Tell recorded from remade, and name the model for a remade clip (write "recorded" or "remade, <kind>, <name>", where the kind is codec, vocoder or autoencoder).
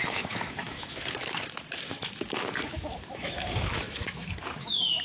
remade, autoencoder, DAC-VAE